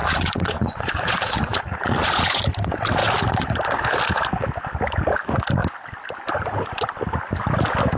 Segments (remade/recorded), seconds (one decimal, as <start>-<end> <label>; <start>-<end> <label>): 0.0-2.4 remade; 2.4-8.0 recorded

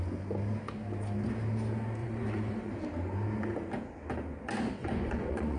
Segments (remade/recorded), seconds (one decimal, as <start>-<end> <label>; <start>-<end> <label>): 0.0-2.0 recorded; 2.0-2.7 remade; 2.7-4.8 recorded; 4.8-5.6 remade

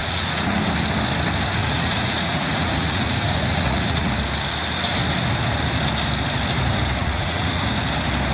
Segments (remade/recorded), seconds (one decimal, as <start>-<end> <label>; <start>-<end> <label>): 0.0-0.6 remade; 0.6-1.6 recorded; 1.6-4.1 remade; 4.1-7.0 recorded; 7.0-7.6 remade; 7.6-8.3 recorded

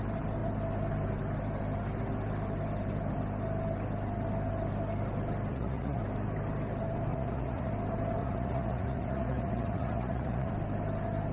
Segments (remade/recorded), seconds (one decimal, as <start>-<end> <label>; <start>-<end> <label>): 0.0-5.5 recorded; 5.5-6.0 remade; 6.0-7.1 recorded; 7.1-7.7 remade; 7.7-8.2 recorded; 8.2-10.5 remade; 10.5-11.3 recorded

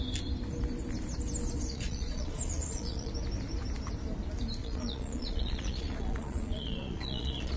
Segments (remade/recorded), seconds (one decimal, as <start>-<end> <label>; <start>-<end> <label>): 0.0-1.7 recorded; 1.7-3.1 remade; 3.1-4.6 recorded; 4.6-7.6 remade

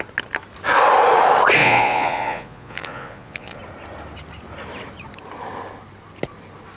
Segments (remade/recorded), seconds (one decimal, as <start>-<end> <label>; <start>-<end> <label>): 0.0-1.6 recorded; 1.6-3.6 remade; 3.6-6.8 recorded

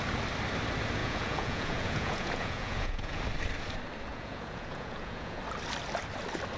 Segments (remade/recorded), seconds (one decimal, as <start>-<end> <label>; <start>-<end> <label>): 0.0-1.0 recorded; 1.0-3.2 remade; 3.2-4.1 recorded; 4.1-5.4 remade; 5.4-6.6 recorded

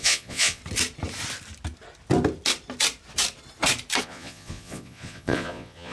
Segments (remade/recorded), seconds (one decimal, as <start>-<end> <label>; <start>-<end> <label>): 0.0-0.6 remade; 0.6-4.0 recorded; 4.0-5.9 remade